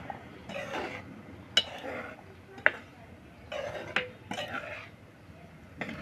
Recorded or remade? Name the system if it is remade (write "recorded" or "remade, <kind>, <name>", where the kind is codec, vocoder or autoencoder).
recorded